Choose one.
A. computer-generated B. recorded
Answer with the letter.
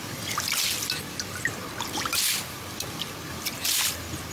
B